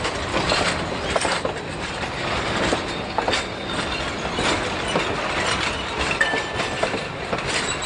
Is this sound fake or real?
real